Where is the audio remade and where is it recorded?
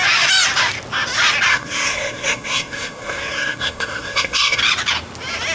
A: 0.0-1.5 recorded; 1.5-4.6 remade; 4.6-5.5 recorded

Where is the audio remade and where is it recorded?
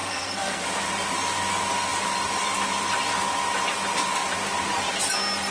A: 0.0-0.6 remade; 0.6-5.5 recorded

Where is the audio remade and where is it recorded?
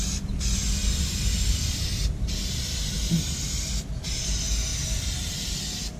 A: 0.0-6.0 recorded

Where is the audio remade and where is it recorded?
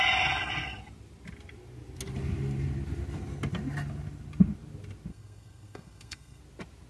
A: 0.0-5.1 recorded; 5.1-6.4 remade; 6.4-6.9 recorded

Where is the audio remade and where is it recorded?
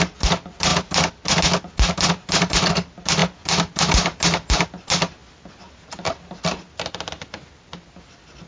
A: 0.0-8.5 recorded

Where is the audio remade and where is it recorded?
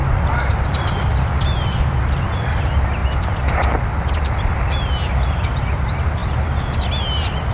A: 0.0-7.5 recorded